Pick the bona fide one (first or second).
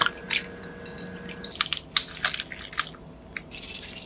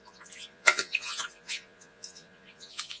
first